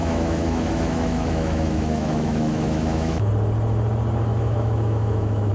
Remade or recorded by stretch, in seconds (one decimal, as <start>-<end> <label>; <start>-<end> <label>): 0.0-3.3 remade; 3.3-4.3 recorded; 4.3-5.5 remade